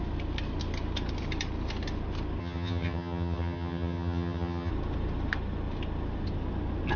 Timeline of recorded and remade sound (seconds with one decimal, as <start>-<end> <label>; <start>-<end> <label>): 0.0-2.4 recorded; 2.4-4.7 remade; 4.7-7.0 recorded